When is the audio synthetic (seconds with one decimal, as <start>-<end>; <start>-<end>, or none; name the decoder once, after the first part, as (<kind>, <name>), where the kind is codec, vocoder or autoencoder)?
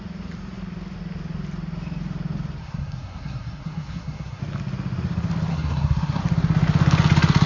2.6-4.4 (codec, SNAC); 5.5-6.2